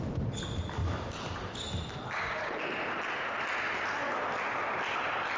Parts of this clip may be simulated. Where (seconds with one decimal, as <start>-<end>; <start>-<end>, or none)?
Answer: none